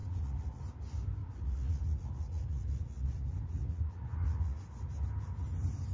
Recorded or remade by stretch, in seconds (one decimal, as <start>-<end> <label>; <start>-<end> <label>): 0.0-0.6 remade; 0.6-1.2 recorded; 1.2-4.6 remade; 4.6-5.9 recorded

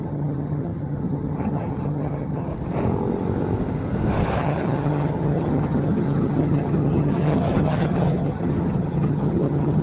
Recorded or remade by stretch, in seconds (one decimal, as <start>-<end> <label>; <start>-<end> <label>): 0.0-2.5 remade; 2.5-4.4 recorded; 4.4-9.8 remade

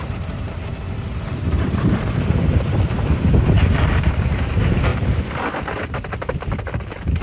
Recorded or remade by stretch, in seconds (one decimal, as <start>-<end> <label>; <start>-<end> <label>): 0.0-0.7 remade; 0.7-1.3 recorded; 1.3-7.2 remade

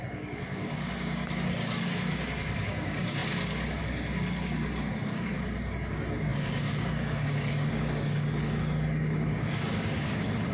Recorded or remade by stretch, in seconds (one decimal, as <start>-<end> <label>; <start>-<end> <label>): 0.0-10.5 remade